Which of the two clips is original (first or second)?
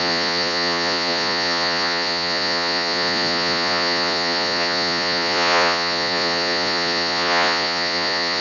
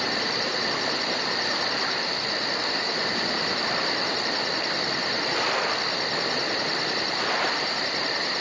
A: second